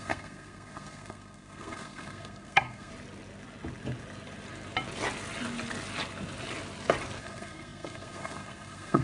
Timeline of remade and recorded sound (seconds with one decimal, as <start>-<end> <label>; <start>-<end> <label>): 0.0-2.9 remade; 2.9-7.2 recorded; 7.2-9.0 remade